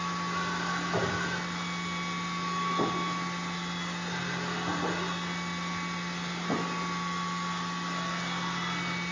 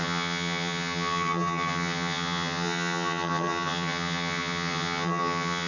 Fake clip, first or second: second